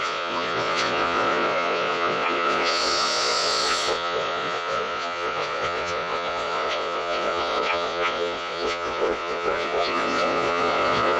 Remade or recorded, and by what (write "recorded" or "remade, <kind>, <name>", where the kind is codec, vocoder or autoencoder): remade, vocoder, Vocos